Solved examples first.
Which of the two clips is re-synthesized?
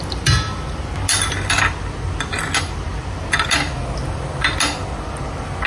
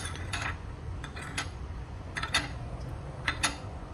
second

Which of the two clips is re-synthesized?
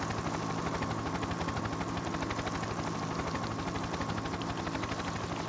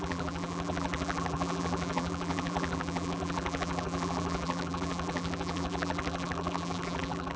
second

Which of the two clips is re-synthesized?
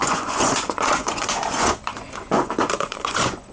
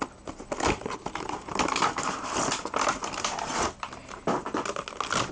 first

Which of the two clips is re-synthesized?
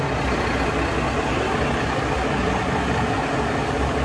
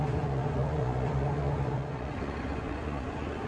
second